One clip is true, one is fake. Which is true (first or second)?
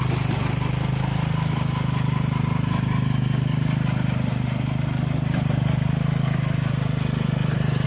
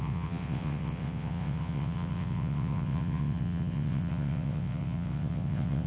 first